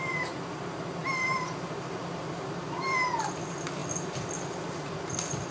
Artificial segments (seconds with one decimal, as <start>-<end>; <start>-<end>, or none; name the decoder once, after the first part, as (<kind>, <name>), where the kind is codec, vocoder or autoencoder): 0.0-3.8 (vocoder, BigVGAN v2); 4.4-5.5